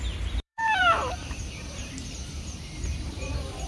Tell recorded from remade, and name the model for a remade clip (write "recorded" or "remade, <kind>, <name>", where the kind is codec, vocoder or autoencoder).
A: remade, vocoder, BigVGAN v2